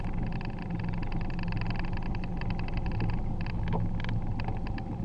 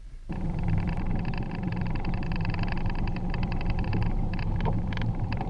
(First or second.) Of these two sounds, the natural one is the first